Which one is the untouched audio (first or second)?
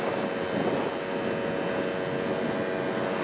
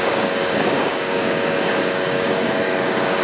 first